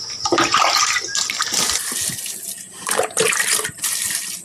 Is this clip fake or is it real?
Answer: real